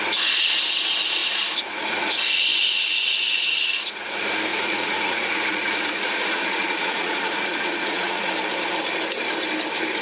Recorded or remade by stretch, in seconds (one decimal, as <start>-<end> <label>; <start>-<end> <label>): 0.0-1.2 recorded; 1.2-2.1 remade; 2.1-2.5 recorded; 2.5-4.1 remade; 4.1-4.5 recorded; 4.5-8.3 remade; 8.3-10.0 recorded